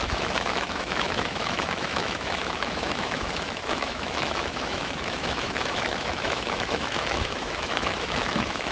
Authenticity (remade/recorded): remade